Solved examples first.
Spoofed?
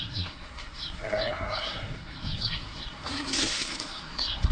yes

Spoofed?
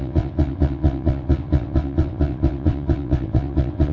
yes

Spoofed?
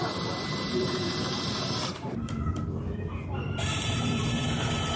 yes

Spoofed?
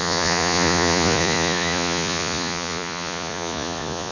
yes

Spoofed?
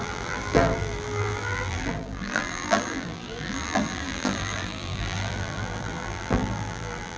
yes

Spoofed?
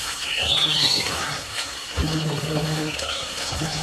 yes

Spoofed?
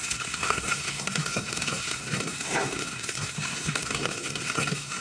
yes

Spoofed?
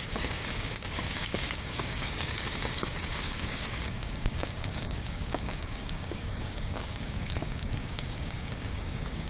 yes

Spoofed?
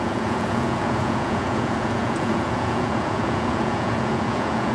yes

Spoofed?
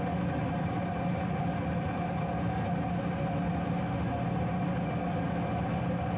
no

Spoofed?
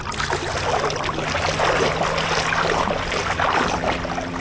no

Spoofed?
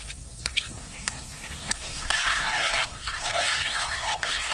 yes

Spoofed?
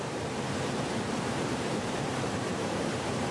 yes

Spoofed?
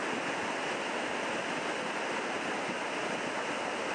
no